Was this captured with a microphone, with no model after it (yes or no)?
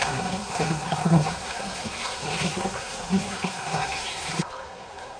no